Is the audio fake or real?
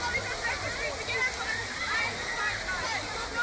real